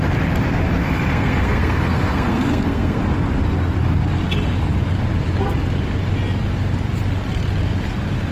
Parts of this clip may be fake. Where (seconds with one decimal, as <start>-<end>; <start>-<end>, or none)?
0.8-3.0